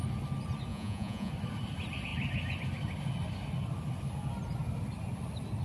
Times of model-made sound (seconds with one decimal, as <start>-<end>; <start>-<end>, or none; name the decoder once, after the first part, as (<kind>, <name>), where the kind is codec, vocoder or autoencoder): 0.7-1.3 (vocoder, Vocos)